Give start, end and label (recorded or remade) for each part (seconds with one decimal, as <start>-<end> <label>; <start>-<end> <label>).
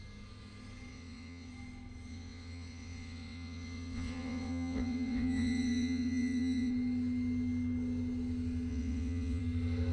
0.0-0.9 recorded; 0.9-1.5 remade; 1.5-2.1 recorded; 2.1-6.7 remade; 6.7-8.7 recorded; 8.7-9.4 remade; 9.4-9.9 recorded